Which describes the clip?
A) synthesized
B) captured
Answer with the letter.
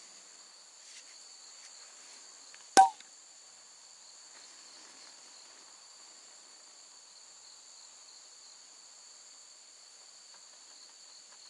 B